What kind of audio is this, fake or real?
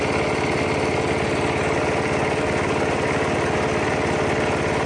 real